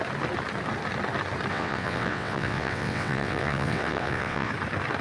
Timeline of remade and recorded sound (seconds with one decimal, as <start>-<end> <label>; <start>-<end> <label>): 0.0-1.5 recorded; 1.5-4.5 remade; 4.5-5.0 recorded